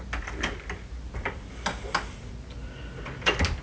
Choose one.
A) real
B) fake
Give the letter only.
A